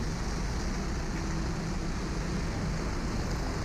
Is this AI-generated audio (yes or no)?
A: no